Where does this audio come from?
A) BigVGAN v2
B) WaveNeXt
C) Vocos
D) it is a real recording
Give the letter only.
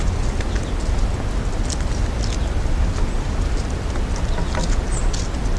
D